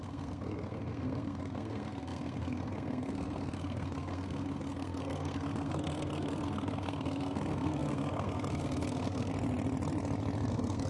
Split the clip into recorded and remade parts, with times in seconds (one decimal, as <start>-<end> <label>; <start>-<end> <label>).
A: 0.0-9.3 remade; 9.3-10.5 recorded; 10.5-10.9 remade